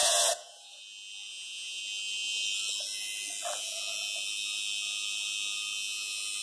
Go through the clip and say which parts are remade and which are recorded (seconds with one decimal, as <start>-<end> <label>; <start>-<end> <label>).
0.0-0.8 remade; 0.8-1.3 recorded; 1.3-1.8 remade; 1.8-6.4 recorded